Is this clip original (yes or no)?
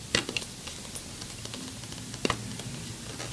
yes